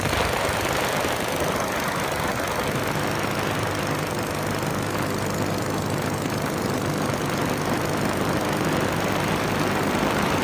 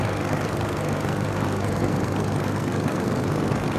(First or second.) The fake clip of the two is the second